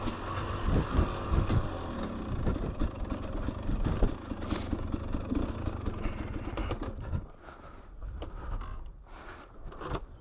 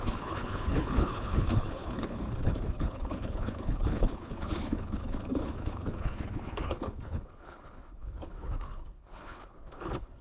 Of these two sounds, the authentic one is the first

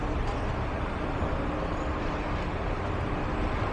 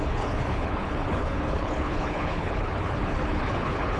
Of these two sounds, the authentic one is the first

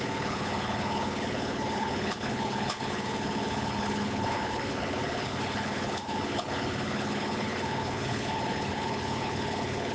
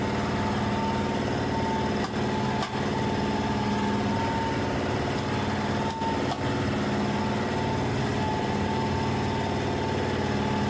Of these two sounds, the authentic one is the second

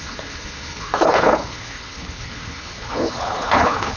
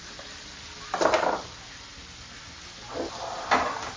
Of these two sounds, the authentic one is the second